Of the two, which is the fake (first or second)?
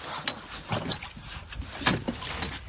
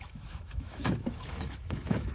second